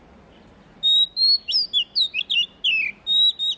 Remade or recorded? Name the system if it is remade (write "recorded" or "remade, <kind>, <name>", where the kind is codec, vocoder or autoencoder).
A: recorded